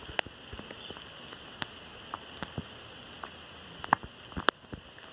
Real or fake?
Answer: real